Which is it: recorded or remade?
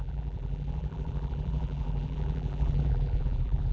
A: remade